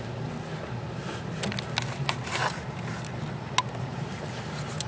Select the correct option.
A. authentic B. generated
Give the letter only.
A